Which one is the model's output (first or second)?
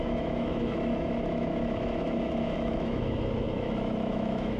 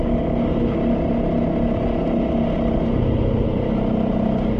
first